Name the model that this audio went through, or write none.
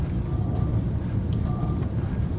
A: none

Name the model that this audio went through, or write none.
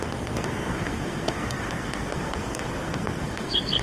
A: codec, SNAC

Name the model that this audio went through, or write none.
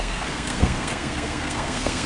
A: codec, SNAC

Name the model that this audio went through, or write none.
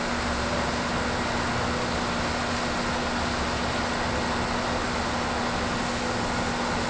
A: none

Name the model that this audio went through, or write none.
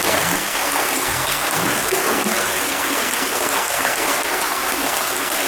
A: codec, SNAC